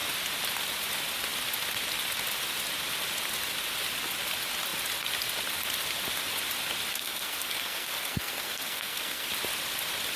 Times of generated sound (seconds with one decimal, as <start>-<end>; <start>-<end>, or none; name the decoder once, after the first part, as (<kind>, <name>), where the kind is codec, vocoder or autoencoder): 6.9-9.3 (codec, SNAC)